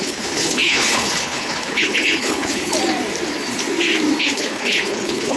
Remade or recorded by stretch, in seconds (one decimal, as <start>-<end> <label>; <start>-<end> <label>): 0.0-2.7 remade; 2.7-4.2 recorded; 4.2-5.4 remade